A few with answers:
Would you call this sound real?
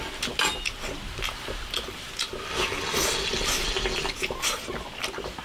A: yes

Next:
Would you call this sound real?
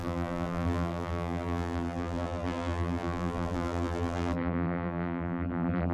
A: no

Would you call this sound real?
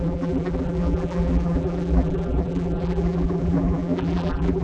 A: no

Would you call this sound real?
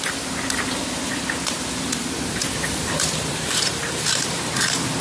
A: no